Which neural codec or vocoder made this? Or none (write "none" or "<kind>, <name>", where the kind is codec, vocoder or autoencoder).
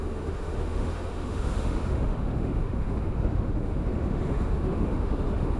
autoencoder, DAC-VAE